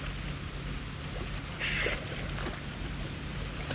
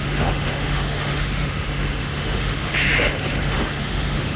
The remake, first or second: second